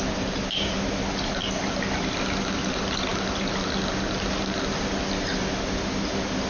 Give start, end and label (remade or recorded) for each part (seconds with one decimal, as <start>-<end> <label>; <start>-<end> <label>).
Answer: 0.0-6.5 recorded